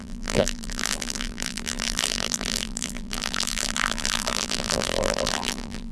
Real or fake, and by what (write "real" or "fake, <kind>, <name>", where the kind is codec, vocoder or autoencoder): fake, vocoder, BigVGAN v2